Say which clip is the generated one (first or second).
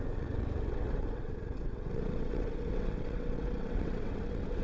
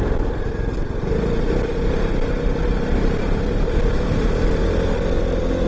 first